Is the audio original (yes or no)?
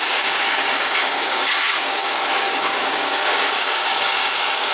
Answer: no